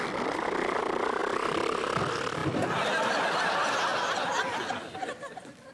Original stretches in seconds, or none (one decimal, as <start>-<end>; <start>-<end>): 0.0-5.7